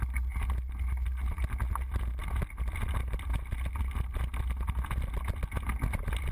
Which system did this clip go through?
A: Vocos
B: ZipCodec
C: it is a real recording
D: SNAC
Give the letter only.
C